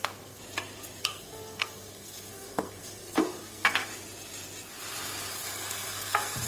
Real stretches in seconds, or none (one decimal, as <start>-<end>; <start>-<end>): 0.4-1.0; 3.9-5.3